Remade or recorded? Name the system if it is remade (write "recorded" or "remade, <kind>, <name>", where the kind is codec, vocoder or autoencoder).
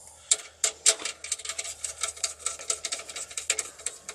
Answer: recorded